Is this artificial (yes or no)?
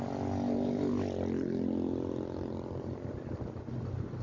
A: no